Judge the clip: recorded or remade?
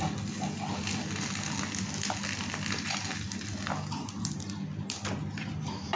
recorded